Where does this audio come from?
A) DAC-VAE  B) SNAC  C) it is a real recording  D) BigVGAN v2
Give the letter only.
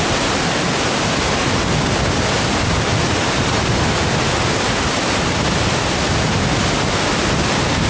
C